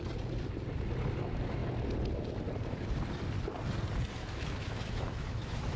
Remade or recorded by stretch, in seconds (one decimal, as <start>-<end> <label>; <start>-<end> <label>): 0.0-4.2 recorded; 4.2-5.8 remade

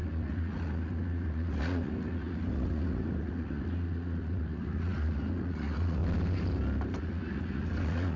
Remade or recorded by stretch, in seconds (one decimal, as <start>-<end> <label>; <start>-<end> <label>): 0.0-6.0 remade; 6.0-7.0 recorded; 7.0-8.2 remade